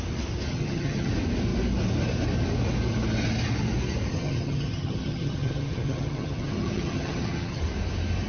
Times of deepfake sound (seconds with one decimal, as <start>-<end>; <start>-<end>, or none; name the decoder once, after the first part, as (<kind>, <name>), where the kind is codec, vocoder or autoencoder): 0.5-1.1 (vocoder, HiFi-GAN); 4.1-7.6